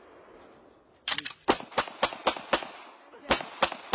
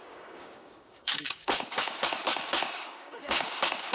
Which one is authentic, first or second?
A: first